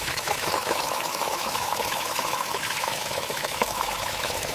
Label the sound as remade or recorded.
remade